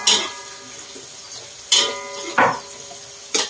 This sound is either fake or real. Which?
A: real